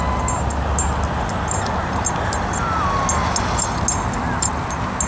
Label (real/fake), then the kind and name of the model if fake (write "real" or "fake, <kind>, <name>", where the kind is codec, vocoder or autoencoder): real